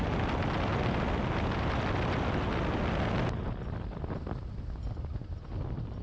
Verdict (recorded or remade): recorded